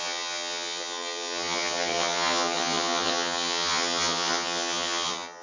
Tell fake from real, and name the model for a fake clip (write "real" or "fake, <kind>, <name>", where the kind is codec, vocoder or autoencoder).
fake, vocoder, HiFi-GAN